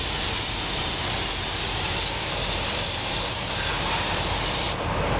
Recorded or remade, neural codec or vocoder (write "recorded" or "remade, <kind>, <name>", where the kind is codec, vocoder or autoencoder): remade, vocoder, BigVGAN v2